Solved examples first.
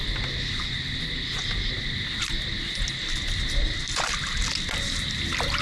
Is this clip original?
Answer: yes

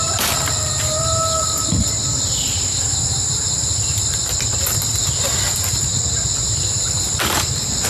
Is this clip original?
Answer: yes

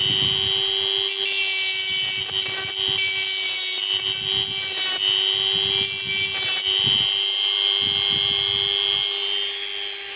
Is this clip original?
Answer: yes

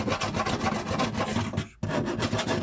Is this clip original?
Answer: yes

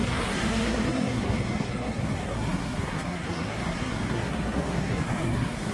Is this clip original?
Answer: no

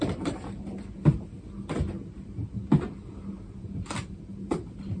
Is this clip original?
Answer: yes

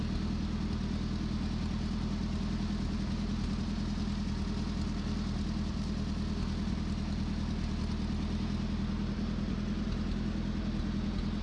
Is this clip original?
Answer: yes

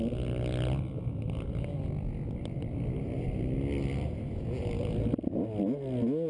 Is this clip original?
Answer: yes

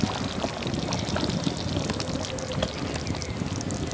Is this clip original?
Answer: yes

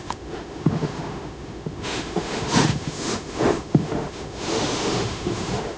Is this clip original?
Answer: no